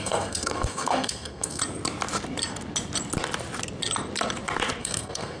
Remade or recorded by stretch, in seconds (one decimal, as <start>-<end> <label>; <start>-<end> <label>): 0.0-1.6 remade; 1.6-4.8 recorded; 4.8-5.4 remade